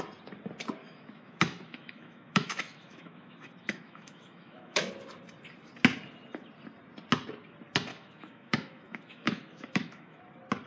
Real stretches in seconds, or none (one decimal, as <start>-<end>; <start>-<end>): 0.0-0.8; 4.9-7.9; 10.2-10.7